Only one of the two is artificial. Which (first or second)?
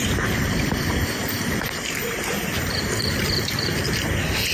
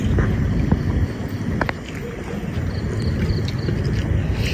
first